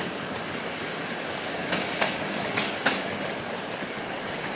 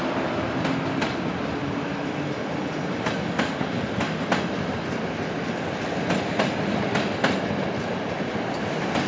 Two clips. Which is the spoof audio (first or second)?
first